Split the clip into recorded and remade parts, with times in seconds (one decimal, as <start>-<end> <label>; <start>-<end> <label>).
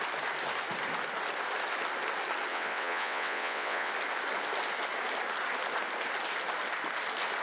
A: 0.0-2.5 recorded; 2.5-3.9 remade; 3.9-7.4 recorded